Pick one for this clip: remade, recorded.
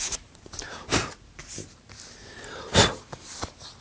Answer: recorded